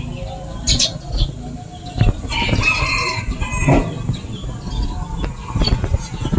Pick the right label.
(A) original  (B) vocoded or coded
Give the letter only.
A